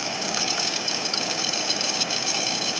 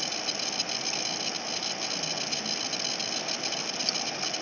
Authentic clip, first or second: second